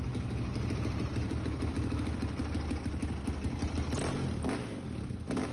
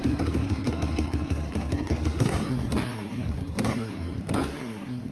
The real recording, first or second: first